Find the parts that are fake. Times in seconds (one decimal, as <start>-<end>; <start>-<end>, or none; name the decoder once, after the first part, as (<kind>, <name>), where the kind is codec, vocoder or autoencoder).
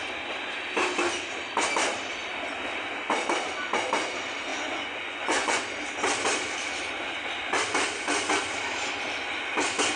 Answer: 4.5-5.6 (vocoder, Vocos)